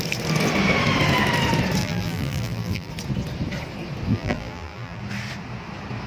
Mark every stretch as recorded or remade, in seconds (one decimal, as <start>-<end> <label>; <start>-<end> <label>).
0.0-1.8 recorded; 1.8-2.9 remade; 2.9-4.1 recorded; 4.1-5.0 remade; 5.0-6.1 recorded